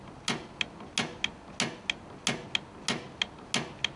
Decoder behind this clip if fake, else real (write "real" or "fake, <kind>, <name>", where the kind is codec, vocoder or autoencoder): real